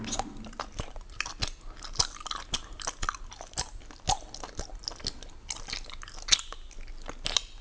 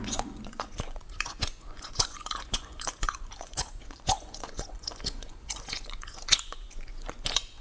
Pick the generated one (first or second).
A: second